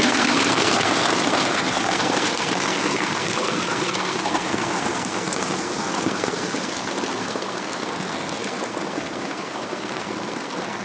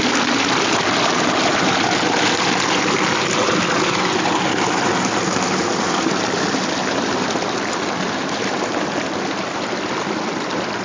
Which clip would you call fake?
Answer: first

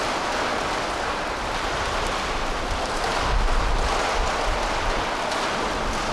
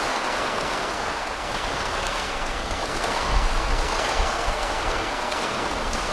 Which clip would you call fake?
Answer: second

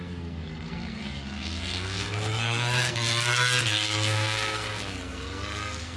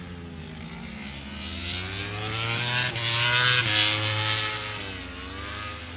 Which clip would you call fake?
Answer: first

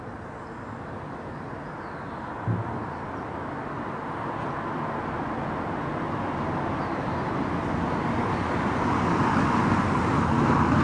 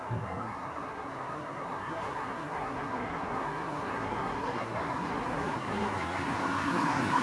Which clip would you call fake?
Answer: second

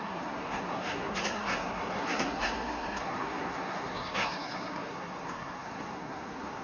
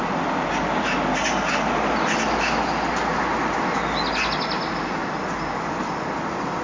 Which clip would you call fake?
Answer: first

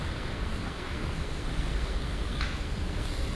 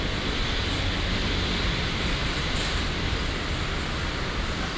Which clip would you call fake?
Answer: first